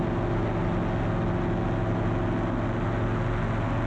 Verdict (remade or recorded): recorded